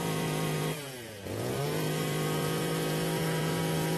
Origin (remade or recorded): remade